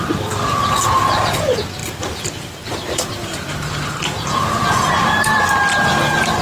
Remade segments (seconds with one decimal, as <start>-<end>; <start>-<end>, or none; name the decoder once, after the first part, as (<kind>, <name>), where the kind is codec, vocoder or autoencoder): 1.8-4.9 (vocoder, BigVGAN v2)